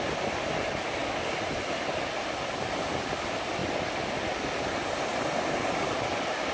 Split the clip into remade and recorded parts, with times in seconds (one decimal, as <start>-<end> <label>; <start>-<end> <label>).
0.0-6.5 recorded

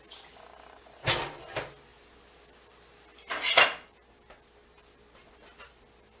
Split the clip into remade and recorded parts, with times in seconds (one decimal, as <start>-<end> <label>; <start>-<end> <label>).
0.0-6.2 recorded

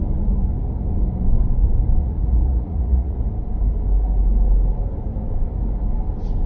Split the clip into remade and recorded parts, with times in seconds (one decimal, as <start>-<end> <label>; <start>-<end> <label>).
0.0-2.0 recorded; 2.0-3.2 remade; 3.2-6.5 recorded

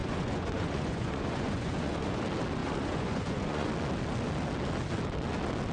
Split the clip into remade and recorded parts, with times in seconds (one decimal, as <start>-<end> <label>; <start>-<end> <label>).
0.0-2.2 remade; 2.2-2.6 recorded; 2.6-3.7 remade; 3.7-5.7 recorded

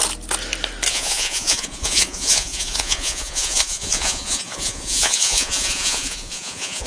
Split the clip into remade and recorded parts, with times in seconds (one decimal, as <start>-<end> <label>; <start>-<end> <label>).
0.0-0.9 recorded; 0.9-6.9 remade

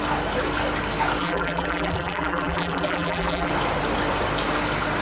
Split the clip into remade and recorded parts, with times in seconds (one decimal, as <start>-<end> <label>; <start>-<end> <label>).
0.0-1.2 recorded; 1.2-3.5 remade; 3.5-5.0 recorded

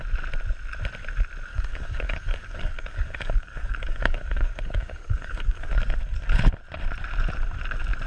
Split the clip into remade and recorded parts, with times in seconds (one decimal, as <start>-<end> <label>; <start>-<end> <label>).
0.0-1.5 recorded; 1.5-5.7 remade; 5.7-8.1 recorded